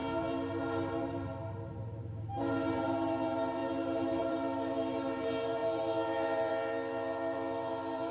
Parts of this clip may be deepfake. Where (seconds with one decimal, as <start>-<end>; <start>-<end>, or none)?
0.0-8.1